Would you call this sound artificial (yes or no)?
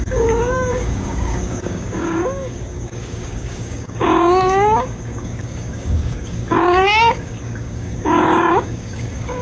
yes